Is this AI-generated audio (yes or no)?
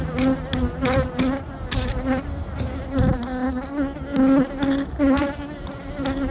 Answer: no